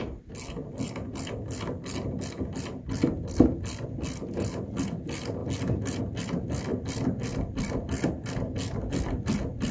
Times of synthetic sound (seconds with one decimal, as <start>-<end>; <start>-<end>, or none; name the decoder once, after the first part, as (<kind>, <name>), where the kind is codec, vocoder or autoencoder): none